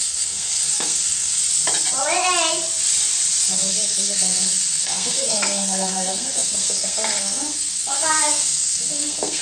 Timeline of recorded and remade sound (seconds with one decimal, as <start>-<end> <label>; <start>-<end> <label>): 0.0-1.4 remade; 1.4-3.5 recorded; 3.5-9.4 remade